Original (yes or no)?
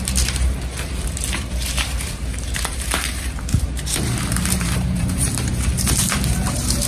no